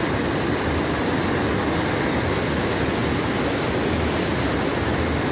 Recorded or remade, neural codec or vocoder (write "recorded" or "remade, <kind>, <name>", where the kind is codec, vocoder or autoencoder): recorded